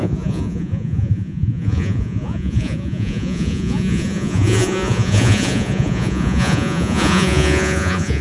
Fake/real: fake